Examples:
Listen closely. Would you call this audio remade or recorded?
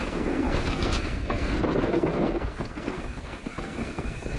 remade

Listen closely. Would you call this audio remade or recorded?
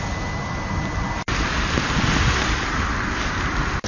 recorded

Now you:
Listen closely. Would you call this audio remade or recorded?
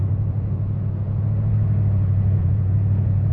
remade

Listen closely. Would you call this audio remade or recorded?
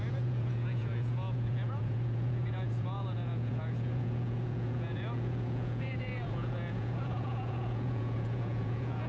remade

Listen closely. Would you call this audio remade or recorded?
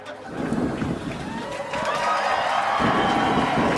recorded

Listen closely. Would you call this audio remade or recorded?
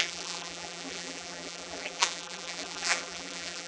remade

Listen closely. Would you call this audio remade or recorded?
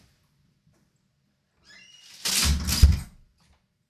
recorded